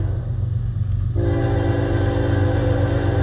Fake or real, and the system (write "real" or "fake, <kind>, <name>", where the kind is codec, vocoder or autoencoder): real